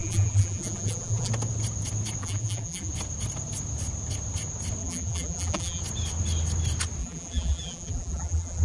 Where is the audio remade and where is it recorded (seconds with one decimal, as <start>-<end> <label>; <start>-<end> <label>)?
0.0-1.3 remade; 1.3-2.2 recorded; 2.2-2.9 remade; 2.9-4.8 recorded; 4.8-5.8 remade; 5.8-7.0 recorded; 7.0-8.6 remade